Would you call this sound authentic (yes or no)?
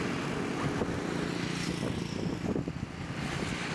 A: yes